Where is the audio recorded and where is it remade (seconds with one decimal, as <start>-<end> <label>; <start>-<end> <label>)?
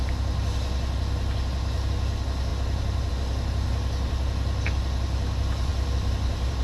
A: 0.0-6.6 recorded